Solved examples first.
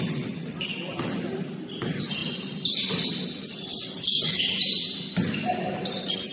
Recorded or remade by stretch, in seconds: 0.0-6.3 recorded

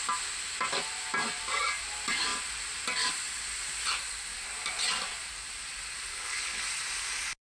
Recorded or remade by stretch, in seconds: 0.0-6.1 recorded; 6.1-6.6 remade; 6.6-7.4 recorded

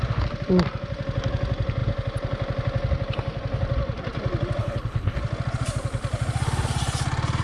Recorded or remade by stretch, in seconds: 0.0-4.6 recorded; 4.6-5.2 remade; 5.2-7.4 recorded